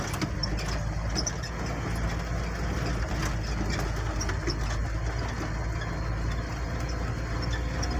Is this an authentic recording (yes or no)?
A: yes